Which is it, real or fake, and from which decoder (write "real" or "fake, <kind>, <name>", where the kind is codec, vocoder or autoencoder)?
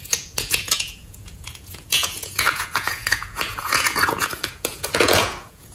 fake, vocoder, Vocos